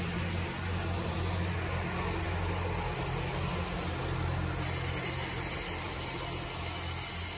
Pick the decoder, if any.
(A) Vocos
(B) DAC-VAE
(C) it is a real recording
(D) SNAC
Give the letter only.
C